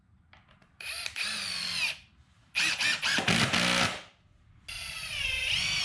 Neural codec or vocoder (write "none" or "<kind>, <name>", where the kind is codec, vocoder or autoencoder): none